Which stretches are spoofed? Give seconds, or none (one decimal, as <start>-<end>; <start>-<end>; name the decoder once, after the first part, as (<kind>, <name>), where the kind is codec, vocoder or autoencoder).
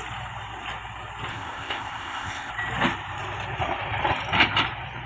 1.3-2.5 (codec, ZipCodec)